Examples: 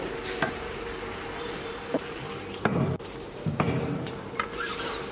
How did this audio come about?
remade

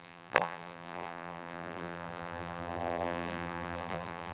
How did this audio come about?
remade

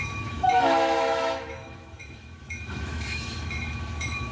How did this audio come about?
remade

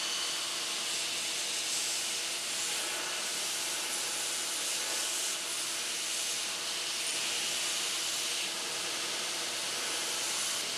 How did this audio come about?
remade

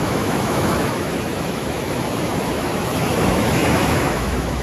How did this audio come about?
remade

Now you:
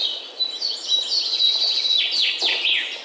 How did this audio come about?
recorded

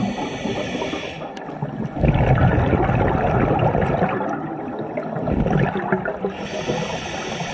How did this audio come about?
recorded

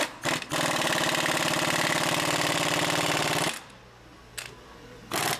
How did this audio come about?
recorded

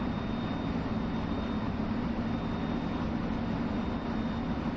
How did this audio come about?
recorded